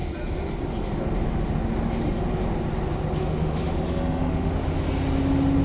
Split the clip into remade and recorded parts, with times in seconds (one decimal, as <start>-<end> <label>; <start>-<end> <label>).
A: 0.0-3.2 recorded; 3.2-4.5 remade; 4.5-5.6 recorded